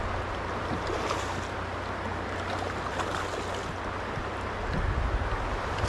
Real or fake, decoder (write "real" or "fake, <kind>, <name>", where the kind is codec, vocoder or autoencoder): real